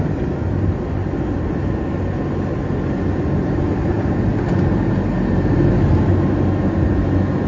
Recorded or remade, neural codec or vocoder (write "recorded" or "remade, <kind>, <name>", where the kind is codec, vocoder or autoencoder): recorded